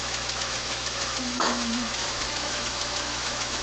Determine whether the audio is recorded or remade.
remade